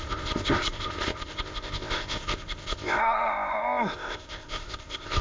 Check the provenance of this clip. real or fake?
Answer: fake